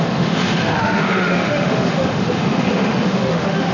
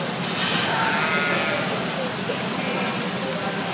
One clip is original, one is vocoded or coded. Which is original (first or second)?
second